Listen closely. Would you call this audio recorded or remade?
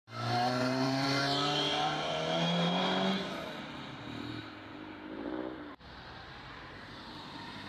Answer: remade